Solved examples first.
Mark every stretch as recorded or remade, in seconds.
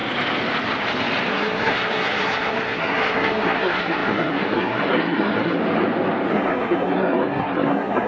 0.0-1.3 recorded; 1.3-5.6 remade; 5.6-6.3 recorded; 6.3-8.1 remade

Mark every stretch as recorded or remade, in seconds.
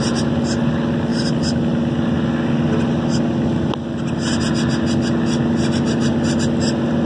0.0-7.0 recorded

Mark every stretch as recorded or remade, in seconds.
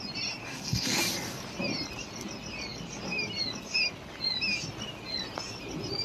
0.0-0.5 recorded; 0.5-1.0 remade; 1.0-6.0 recorded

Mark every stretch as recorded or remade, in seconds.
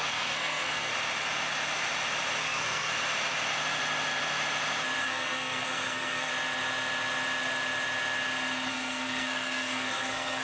0.0-0.9 remade; 0.9-2.4 recorded; 2.4-2.9 remade; 2.9-5.0 recorded; 5.0-6.3 remade; 6.3-8.7 recorded; 8.7-10.4 remade